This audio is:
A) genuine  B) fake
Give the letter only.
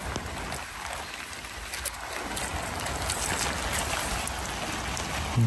A